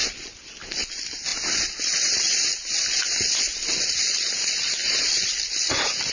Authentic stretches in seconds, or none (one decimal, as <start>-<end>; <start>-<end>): 0.0-6.1